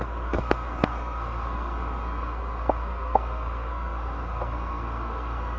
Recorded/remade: remade